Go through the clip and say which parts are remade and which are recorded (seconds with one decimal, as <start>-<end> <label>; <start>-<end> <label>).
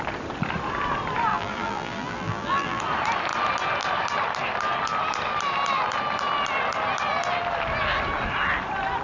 0.0-1.3 recorded; 1.3-2.8 remade; 2.8-9.0 recorded